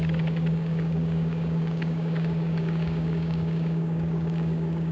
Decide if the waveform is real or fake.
fake